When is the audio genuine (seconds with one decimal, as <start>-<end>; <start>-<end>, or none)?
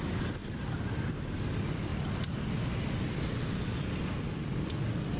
0.0-5.2